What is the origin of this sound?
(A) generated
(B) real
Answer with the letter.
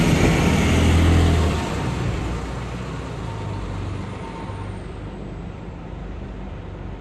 B